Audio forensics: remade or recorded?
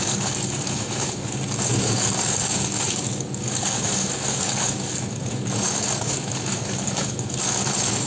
remade